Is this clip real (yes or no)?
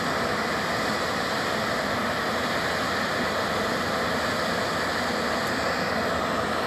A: yes